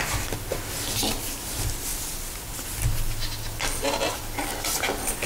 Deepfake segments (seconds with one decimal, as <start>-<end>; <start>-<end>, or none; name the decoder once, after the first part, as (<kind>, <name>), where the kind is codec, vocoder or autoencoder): none